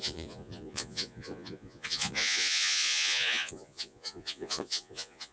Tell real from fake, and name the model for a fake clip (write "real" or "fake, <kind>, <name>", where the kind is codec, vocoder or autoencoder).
fake, vocoder, Vocos